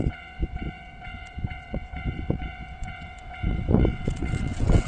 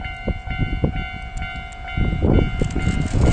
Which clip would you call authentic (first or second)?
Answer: second